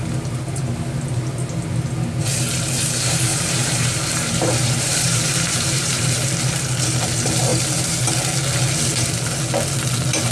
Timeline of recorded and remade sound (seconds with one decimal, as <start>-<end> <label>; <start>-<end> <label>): 0.0-3.3 recorded; 3.3-6.1 remade; 6.1-7.5 recorded; 7.5-8.1 remade; 8.1-10.3 recorded